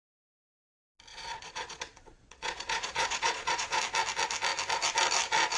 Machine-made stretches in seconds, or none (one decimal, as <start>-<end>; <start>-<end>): 1.1-3.8